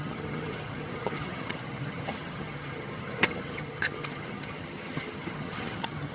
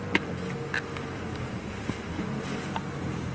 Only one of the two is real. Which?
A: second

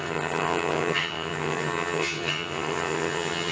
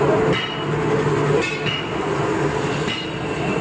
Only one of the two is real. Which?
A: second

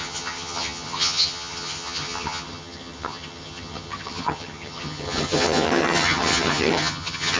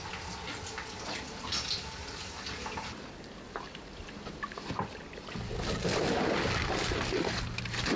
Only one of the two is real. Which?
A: second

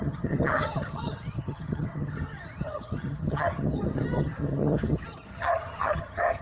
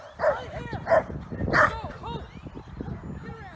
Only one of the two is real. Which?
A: second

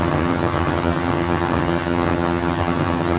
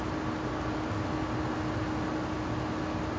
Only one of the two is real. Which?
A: second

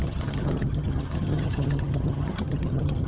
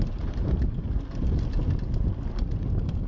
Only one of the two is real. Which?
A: second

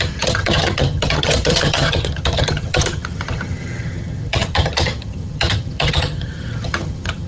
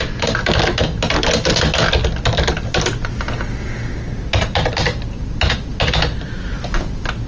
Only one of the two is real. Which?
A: second